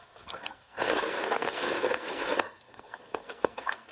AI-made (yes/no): yes